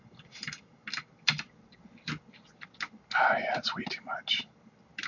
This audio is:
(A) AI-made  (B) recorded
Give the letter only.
B